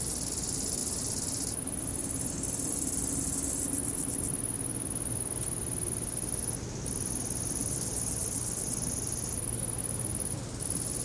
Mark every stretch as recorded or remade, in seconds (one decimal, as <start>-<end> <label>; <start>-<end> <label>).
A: 0.0-11.0 recorded